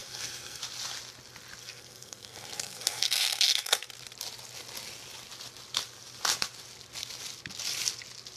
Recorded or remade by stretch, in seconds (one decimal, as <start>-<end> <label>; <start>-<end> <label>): 0.0-0.6 remade; 0.6-1.6 recorded; 1.6-3.9 remade; 3.9-8.4 recorded